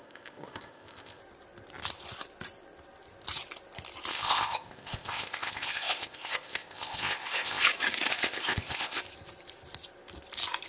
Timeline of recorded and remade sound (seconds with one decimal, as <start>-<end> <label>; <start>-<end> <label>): 0.0-1.2 remade; 1.2-4.1 recorded; 4.1-7.6 remade; 7.6-8.1 recorded; 8.1-9.0 remade; 9.0-10.7 recorded